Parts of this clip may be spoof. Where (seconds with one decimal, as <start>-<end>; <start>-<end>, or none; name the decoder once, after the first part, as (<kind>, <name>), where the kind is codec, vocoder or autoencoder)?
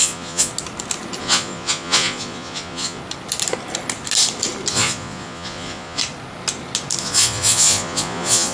0.0-0.5 (vocoder, Vocos); 1.2-3.0; 4.7-6.0; 7.0-8.5